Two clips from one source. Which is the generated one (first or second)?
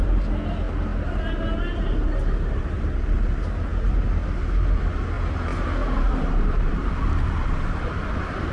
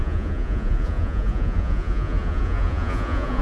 second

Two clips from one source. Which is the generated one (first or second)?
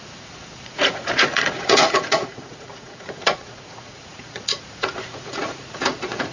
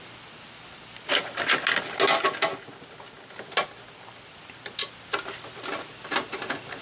first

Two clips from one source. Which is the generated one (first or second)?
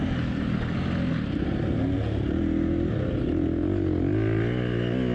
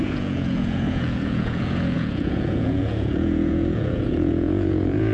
second